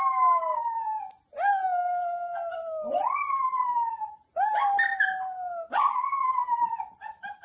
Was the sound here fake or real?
real